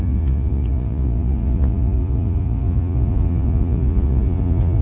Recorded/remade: remade